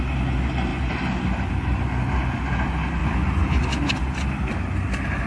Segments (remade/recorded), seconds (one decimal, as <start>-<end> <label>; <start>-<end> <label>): 0.0-5.3 recorded

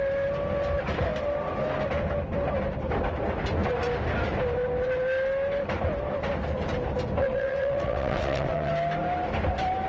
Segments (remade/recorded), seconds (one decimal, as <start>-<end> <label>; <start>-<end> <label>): 0.0-7.2 recorded; 7.2-8.7 remade; 8.7-9.9 recorded

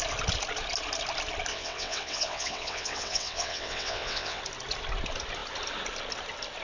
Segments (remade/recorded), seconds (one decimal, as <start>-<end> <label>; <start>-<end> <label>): 0.0-1.5 recorded; 1.5-4.4 remade; 4.4-6.6 recorded